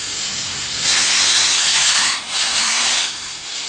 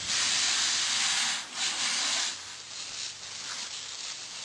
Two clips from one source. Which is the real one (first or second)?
second